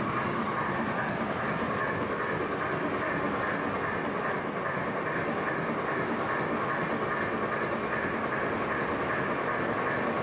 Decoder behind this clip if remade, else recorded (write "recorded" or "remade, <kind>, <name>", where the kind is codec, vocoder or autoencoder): recorded